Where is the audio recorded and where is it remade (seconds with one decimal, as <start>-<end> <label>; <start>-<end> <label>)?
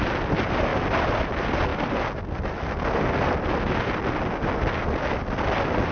0.0-5.9 recorded